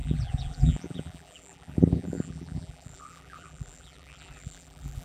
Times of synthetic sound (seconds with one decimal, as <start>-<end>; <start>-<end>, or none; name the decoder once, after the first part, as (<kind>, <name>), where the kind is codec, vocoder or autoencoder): 0.0-5.0 (vocoder, BigVGAN v2)